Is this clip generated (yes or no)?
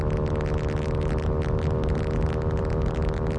no